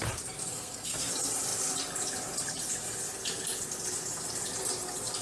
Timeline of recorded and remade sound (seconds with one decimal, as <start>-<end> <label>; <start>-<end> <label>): 0.0-0.5 recorded; 0.5-1.1 remade; 1.1-5.2 recorded